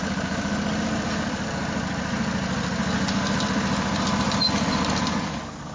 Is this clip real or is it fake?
real